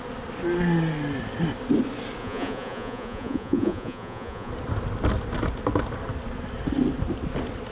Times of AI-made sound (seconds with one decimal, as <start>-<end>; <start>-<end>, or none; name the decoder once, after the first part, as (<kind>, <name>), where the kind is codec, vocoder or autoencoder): 2.2-4.5 (vocoder, Vocos)